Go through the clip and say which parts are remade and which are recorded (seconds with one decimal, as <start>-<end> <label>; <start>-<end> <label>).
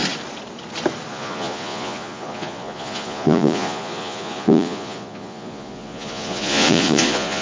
0.0-1.1 recorded; 1.1-7.4 remade